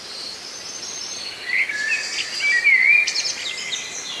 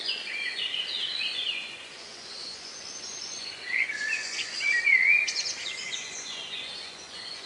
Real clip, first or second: first